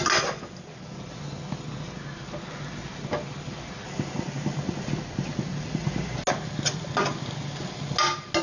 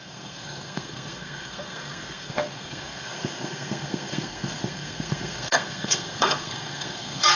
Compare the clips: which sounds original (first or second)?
first